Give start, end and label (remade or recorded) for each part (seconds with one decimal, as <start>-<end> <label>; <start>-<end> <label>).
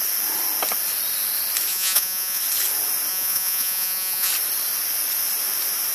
0.0-1.7 recorded; 1.7-2.4 remade; 2.4-3.1 recorded; 3.1-4.3 remade; 4.3-5.9 recorded